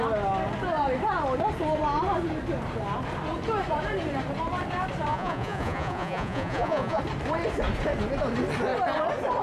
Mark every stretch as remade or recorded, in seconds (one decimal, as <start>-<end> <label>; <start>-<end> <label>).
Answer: 0.0-5.1 recorded; 5.1-7.0 remade; 7.0-9.4 recorded